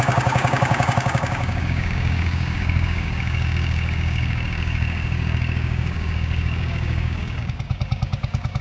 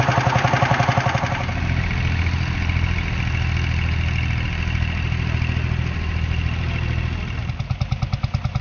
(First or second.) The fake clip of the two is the first